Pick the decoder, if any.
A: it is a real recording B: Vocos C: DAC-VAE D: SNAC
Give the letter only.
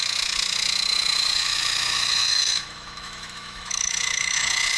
C